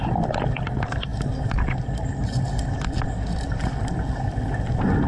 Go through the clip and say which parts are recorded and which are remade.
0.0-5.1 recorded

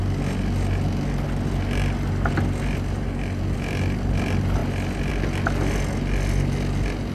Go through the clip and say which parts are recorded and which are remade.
0.0-7.1 recorded

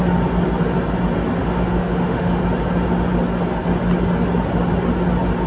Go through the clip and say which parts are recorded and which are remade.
0.0-1.4 recorded; 1.4-2.4 remade; 2.4-5.5 recorded

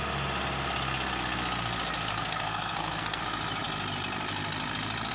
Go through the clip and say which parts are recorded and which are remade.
0.0-2.1 recorded; 2.1-3.2 remade; 3.2-5.1 recorded

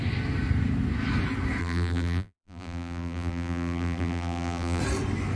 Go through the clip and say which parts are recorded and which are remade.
0.0-1.6 recorded; 1.6-4.8 remade; 4.8-5.4 recorded

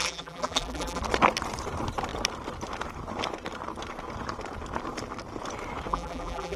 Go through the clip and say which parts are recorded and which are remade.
0.0-1.0 remade; 1.0-5.9 recorded; 5.9-6.6 remade

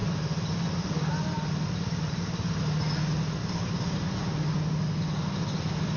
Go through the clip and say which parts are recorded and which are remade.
0.0-6.0 recorded

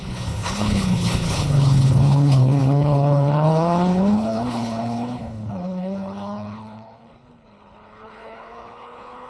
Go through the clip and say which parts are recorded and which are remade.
0.0-9.3 remade